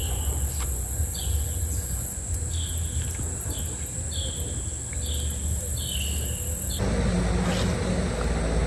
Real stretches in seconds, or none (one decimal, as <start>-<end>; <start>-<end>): 2.4-8.7